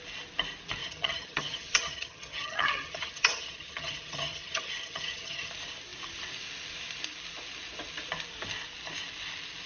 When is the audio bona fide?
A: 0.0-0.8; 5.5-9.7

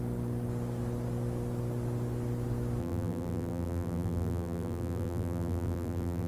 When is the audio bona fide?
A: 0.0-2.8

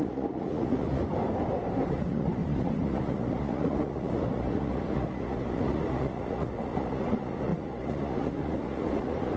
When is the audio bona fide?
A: 1.0-1.9

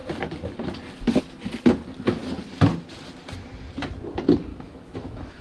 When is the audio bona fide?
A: 0.0-4.5

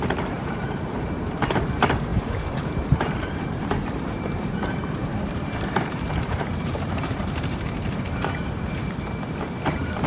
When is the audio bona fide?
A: none

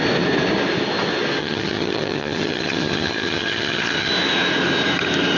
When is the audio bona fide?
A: 0.0-1.4; 4.1-5.4

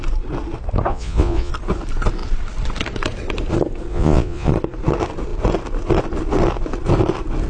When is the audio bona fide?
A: 0.0-0.9; 1.5-3.9; 4.5-7.5

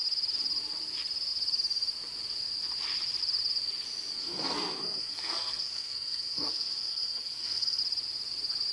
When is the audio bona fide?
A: 0.0-4.2; 7.8-8.7